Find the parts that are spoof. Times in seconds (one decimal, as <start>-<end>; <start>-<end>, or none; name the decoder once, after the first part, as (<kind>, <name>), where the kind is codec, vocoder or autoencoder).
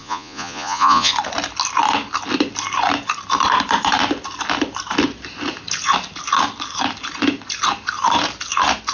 0.0-1.1 (vocoder, Vocos)